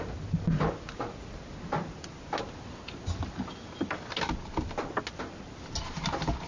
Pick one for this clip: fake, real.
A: real